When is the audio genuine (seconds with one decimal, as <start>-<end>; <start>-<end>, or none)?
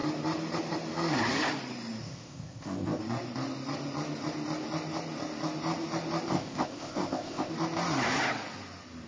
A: 0.0-2.0; 3.0-6.3; 7.5-9.1